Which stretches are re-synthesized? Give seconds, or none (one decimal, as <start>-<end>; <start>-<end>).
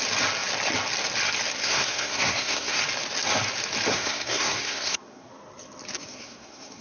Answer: 1.6-2.8; 3.9-5.3; 6.1-6.8